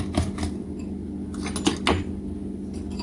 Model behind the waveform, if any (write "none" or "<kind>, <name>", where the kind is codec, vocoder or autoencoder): none